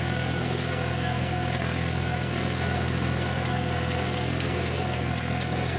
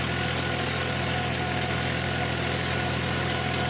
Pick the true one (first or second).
second